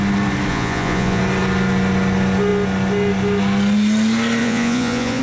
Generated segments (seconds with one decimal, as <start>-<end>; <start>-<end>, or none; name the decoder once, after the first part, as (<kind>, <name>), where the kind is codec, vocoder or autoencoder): 0.5-1.2 (vocoder, Vocos); 4.4-5.2